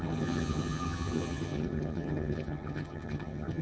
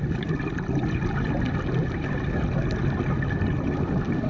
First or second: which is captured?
second